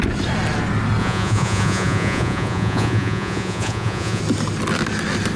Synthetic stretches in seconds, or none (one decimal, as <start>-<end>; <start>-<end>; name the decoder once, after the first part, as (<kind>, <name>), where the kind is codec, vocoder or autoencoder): 1.0-4.2 (vocoder, Vocos)